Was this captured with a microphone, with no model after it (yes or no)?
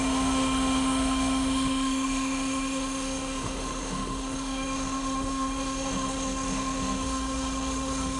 no